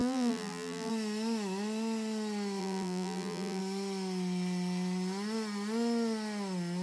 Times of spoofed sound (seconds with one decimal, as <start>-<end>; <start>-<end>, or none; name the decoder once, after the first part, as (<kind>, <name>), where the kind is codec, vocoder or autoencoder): 0.0-0.9 (vocoder, BigVGAN v2); 2.6-3.6